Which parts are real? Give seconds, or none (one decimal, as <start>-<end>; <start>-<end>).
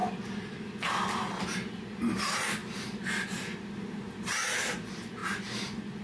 0.0-6.0